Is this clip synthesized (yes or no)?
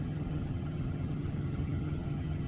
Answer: yes